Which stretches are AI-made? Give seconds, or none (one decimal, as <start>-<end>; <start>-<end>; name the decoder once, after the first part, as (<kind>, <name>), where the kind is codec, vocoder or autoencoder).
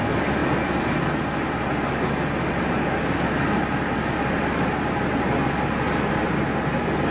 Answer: none